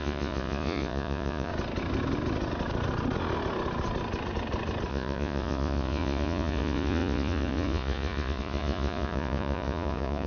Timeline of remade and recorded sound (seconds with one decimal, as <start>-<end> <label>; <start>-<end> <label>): 0.0-1.5 remade; 1.5-4.9 recorded; 4.9-10.3 remade